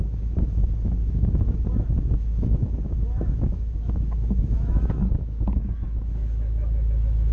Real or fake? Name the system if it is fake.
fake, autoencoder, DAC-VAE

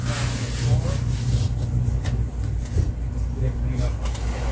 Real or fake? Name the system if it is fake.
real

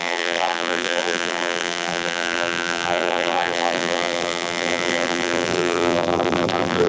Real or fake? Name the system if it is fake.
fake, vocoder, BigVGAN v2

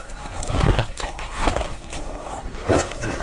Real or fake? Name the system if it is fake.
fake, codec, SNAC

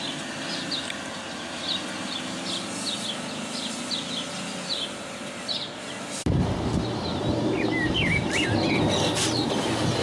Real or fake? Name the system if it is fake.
real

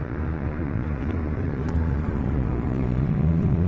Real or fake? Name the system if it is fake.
fake, vocoder, Vocos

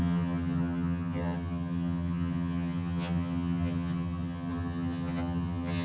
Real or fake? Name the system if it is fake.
fake, vocoder, HiFi-GAN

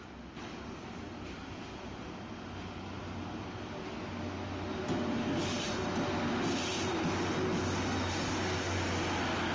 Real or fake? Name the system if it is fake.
real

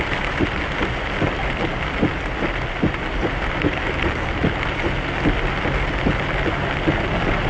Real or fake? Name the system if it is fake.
real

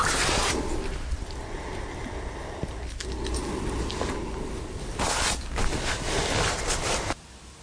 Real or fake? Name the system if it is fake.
real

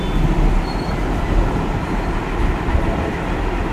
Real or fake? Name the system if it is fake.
real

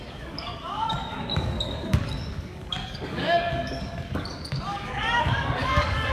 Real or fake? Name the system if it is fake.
fake, codec, DAC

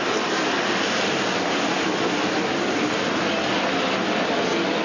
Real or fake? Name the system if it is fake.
real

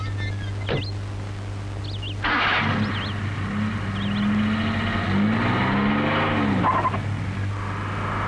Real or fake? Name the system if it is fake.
real